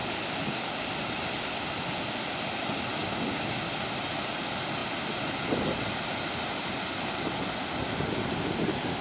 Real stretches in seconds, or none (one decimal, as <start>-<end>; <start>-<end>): 0.0-9.0